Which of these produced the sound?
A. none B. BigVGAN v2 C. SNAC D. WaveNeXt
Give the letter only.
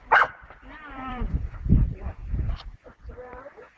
B